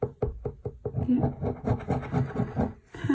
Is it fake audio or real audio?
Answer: real